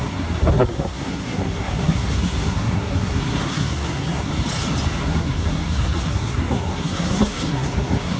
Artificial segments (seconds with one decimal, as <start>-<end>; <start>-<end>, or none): 0.0-4.3; 5.0-8.2